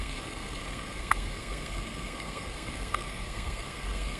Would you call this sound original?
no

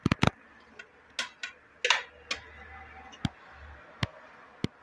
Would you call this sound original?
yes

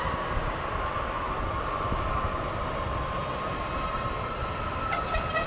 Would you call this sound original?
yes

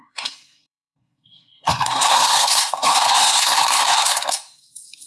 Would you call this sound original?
no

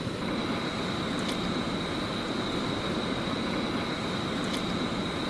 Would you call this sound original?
yes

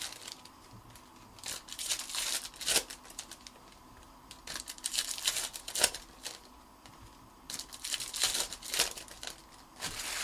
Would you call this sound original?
yes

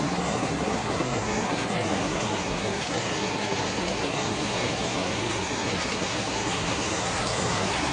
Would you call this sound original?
no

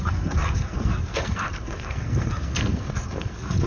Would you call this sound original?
no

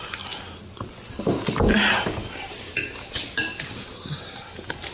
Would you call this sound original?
yes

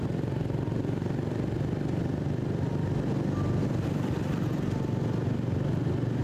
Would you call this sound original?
yes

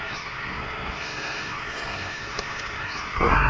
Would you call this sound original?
no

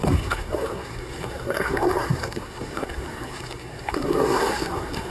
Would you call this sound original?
no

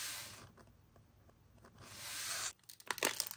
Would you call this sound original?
yes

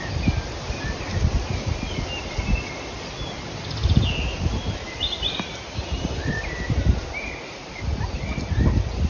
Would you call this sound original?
yes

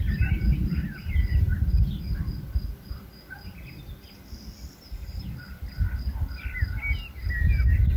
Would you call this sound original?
yes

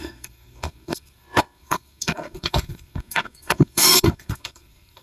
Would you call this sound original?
no